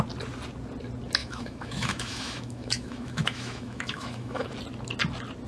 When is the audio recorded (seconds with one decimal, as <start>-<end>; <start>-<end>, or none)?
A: 0.0-1.2; 4.5-5.5